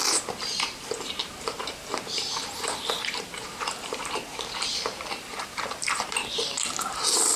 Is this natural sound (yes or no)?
no